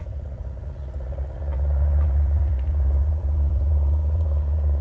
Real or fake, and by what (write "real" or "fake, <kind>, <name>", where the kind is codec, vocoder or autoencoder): fake, vocoder, Vocos